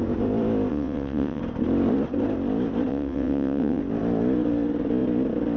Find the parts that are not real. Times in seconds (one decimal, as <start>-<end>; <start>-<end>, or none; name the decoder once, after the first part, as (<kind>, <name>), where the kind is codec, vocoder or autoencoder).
0.7-1.4 (vocoder, WaveNeXt); 2.9-3.8